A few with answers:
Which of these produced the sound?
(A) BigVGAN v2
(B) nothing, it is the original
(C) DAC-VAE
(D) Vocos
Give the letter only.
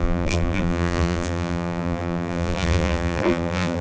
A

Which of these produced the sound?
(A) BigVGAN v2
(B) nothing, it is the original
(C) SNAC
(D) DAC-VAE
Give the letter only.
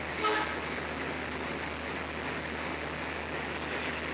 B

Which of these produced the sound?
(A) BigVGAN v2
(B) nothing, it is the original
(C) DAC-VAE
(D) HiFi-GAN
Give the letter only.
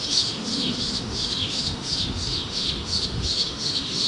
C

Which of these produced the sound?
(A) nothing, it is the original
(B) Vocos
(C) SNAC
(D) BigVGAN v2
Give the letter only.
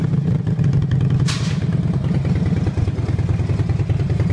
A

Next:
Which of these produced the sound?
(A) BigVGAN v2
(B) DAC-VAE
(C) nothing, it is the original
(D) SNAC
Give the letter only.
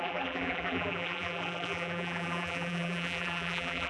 A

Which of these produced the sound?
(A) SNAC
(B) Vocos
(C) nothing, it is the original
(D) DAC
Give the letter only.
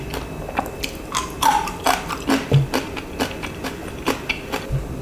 C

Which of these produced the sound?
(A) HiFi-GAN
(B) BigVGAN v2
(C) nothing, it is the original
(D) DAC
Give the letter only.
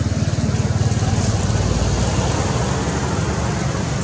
C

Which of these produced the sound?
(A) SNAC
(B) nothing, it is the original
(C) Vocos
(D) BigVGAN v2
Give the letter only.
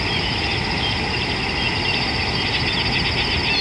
B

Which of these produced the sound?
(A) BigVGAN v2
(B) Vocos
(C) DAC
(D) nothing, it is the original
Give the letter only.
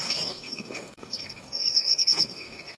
C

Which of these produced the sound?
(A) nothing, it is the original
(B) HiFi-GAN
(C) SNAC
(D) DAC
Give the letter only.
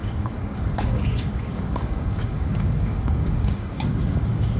D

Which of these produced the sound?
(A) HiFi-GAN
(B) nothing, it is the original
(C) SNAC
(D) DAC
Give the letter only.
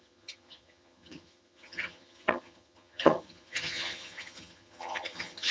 A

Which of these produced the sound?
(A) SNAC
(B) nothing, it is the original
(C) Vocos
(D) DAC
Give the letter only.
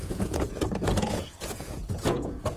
C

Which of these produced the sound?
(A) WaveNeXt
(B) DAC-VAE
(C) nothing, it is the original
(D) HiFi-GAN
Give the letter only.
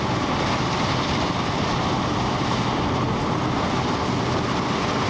C